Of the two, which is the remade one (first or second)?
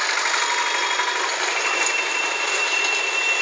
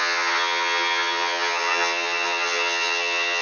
second